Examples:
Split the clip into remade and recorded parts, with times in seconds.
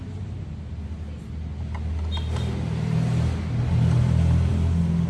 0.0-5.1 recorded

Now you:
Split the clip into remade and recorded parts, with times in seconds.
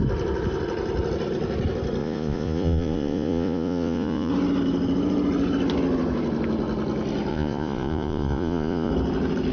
0.0-2.0 recorded; 2.0-4.3 remade; 4.3-7.3 recorded; 7.3-8.9 remade; 8.9-9.5 recorded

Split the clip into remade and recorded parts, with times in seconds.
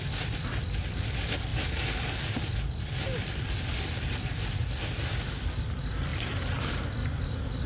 0.0-7.7 recorded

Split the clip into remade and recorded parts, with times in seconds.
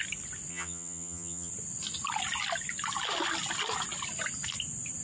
0.0-0.5 recorded; 0.5-1.5 remade; 1.5-5.0 recorded